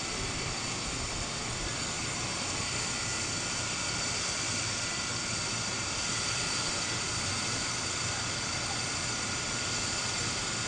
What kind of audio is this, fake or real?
fake